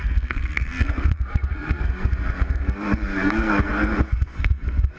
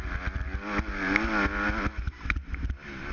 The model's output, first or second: first